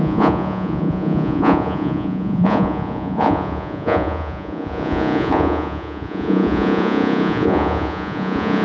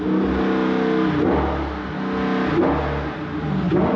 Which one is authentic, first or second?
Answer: second